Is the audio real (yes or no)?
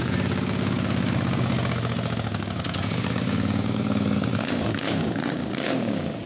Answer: no